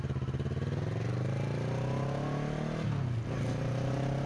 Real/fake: real